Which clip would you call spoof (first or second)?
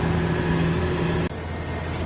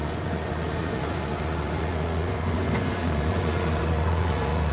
second